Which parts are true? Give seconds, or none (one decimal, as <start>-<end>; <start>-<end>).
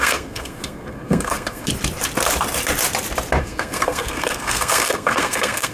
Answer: 1.7-3.4